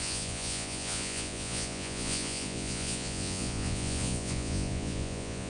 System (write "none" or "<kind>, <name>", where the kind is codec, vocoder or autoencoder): vocoder, Vocos